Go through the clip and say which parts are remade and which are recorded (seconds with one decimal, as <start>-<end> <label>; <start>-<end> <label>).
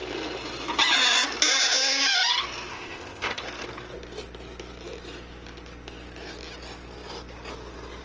0.0-2.7 recorded; 2.7-3.4 remade; 3.4-8.0 recorded